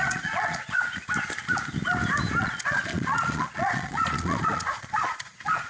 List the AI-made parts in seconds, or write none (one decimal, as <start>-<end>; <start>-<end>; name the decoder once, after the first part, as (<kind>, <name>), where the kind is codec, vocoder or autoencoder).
0.0-1.0 (vocoder, Vocos); 2.4-5.7